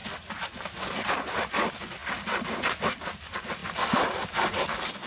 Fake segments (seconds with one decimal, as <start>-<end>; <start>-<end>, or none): 0.8-2.0; 2.8-5.1